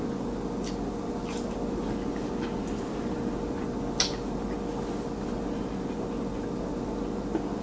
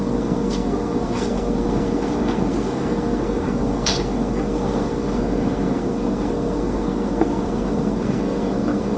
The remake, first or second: second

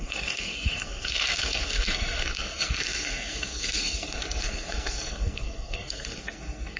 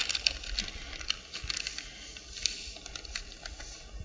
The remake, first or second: first